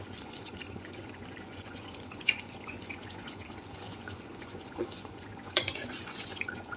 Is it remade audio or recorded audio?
remade